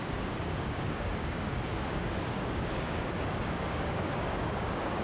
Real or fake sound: fake